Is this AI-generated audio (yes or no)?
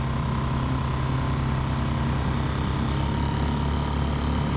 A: no